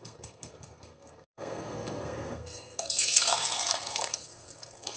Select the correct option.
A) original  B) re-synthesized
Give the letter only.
B